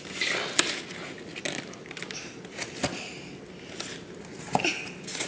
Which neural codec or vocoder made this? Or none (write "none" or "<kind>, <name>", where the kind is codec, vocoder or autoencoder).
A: none